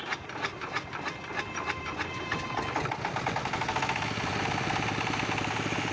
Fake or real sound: real